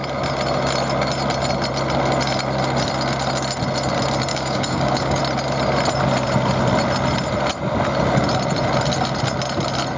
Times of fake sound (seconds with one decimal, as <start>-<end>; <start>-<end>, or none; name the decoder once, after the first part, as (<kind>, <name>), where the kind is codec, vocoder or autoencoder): 4.3-5.2 (codec, DAC)